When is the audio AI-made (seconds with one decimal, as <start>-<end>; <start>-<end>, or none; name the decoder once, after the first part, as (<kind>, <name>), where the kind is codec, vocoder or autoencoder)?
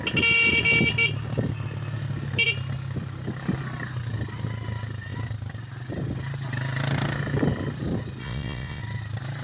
8.2-8.8 (vocoder, Vocos)